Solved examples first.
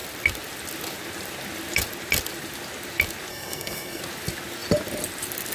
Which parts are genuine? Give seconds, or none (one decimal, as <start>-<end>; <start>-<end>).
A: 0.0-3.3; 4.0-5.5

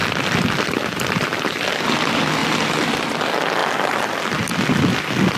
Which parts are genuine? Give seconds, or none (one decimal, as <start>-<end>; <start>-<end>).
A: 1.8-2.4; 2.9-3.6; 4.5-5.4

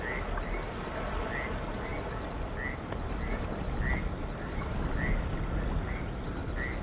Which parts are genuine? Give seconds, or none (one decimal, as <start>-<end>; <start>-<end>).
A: 0.0-6.8

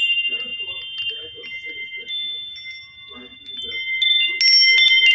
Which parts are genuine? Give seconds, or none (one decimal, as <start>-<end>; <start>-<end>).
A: 0.0-5.1